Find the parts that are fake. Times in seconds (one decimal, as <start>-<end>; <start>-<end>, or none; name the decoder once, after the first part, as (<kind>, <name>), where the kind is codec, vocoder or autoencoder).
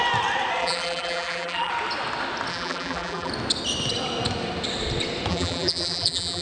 0.6-1.7 (vocoder, BigVGAN v2); 2.5-3.3; 5.3-6.4